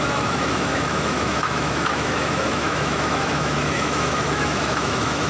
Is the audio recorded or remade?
remade